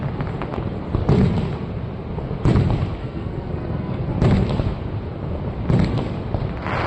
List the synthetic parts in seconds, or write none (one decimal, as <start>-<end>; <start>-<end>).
3.0-4.0